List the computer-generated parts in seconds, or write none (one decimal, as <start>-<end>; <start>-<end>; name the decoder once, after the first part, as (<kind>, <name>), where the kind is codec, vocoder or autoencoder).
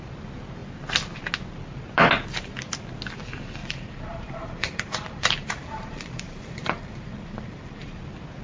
3.6-8.0 (vocoder, BigVGAN v2)